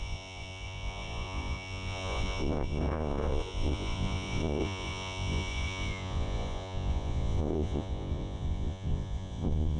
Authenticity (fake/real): fake